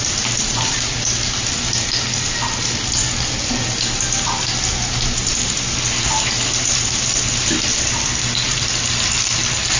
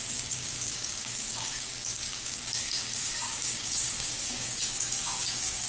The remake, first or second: second